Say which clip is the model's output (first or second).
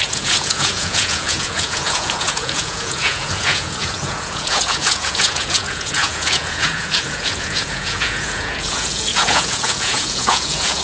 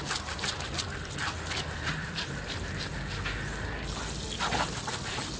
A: first